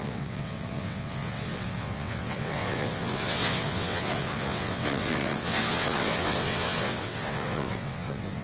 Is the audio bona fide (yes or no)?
no